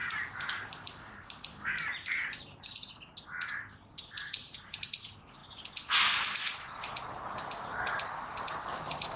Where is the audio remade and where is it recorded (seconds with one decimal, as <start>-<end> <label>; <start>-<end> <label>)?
0.0-2.7 remade; 2.7-4.4 recorded; 4.4-4.9 remade; 4.9-9.2 recorded